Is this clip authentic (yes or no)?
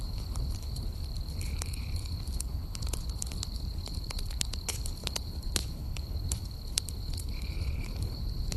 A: no